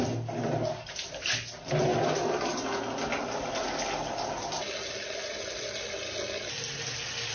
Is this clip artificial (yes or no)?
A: no